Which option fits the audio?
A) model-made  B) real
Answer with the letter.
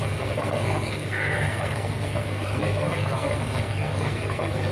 A